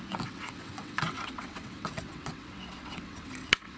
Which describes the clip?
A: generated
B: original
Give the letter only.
A